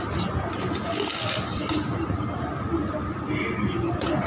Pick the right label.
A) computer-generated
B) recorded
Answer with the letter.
B